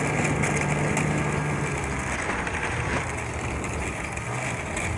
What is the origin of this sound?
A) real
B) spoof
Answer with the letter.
A